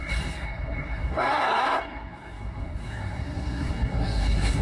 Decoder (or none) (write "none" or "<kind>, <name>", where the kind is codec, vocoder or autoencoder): codec, SNAC